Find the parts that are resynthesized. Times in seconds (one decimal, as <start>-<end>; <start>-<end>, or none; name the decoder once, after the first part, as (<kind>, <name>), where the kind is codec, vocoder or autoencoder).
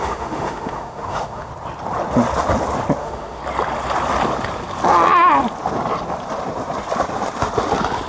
0.0-1.5 (autoencoder, DAC-VAE); 3.0-3.4